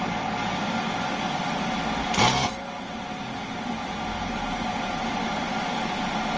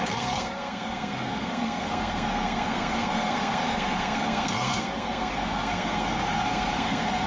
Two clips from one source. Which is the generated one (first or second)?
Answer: second